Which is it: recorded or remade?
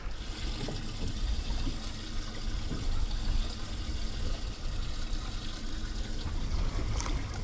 recorded